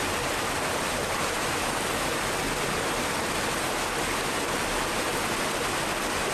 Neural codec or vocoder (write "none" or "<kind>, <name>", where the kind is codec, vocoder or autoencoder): none